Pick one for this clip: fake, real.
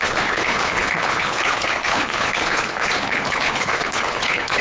fake